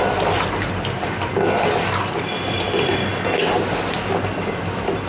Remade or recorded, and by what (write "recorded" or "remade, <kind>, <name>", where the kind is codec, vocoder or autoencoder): recorded